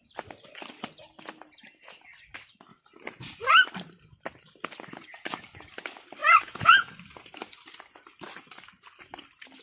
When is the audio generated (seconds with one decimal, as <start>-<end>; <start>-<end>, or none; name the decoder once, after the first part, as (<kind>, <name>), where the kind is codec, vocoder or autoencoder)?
6.2-6.9 (vocoder, Vocos)